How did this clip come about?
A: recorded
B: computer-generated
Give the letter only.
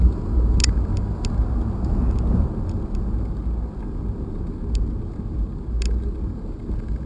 A